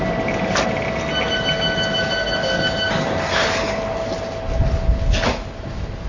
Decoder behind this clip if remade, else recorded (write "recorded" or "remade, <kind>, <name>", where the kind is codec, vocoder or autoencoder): recorded